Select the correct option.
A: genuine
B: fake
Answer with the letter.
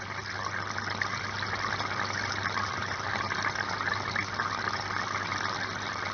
A